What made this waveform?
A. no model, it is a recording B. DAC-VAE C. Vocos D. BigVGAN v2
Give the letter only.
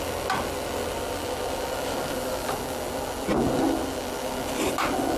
A